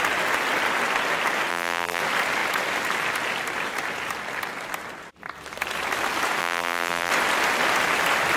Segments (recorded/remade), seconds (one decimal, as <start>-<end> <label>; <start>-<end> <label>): 0.0-1.5 recorded; 1.5-2.0 remade; 2.0-6.4 recorded; 6.4-7.1 remade; 7.1-8.4 recorded